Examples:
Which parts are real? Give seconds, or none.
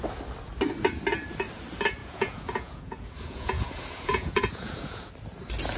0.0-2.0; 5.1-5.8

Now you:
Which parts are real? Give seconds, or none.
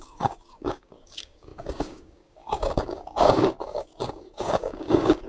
none